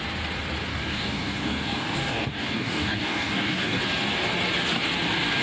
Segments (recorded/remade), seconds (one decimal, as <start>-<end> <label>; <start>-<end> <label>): 0.0-0.7 recorded; 0.7-3.8 remade; 3.8-5.4 recorded